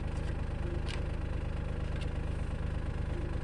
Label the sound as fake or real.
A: real